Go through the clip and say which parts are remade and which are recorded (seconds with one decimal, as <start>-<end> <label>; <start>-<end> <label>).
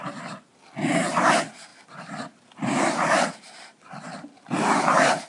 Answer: 0.0-0.5 remade; 0.5-1.2 recorded; 1.2-5.3 remade